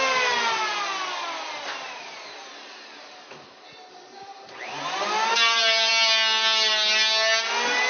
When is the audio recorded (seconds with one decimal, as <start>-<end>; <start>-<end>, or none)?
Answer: 0.0-5.3; 5.9-7.9